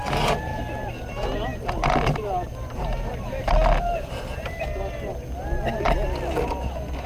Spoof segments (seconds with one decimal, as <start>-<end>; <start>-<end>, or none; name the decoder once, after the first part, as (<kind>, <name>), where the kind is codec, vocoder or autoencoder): none